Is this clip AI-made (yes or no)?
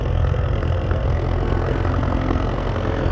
yes